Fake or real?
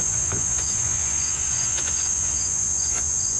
fake